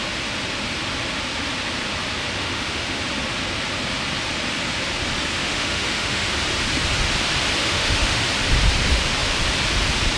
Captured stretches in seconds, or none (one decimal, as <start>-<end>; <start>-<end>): 0.0-2.4; 3.0-5.4; 6.3-7.6; 8.2-10.2

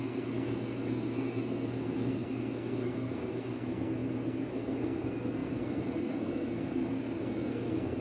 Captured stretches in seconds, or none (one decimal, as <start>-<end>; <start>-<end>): none

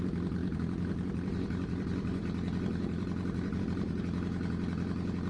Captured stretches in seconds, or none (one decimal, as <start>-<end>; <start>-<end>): 0.0-5.3

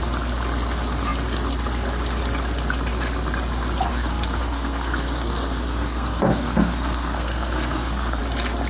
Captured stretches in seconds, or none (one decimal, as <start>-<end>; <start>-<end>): 0.0-3.9; 8.2-8.7

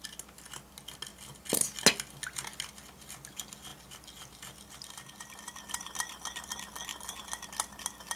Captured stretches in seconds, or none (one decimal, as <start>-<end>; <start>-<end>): 0.0-8.2

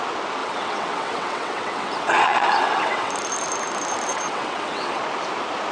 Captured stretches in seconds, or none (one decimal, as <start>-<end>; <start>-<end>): 0.0-0.4; 3.1-4.1; 5.0-5.7